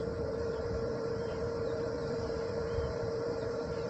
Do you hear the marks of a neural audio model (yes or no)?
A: yes